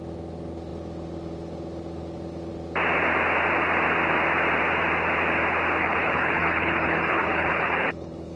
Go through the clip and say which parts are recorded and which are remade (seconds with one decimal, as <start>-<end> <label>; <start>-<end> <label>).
0.0-5.8 recorded; 5.8-8.4 remade